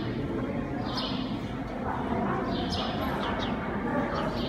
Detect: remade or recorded recorded